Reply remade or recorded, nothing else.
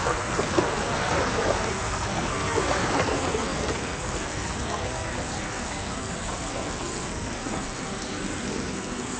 remade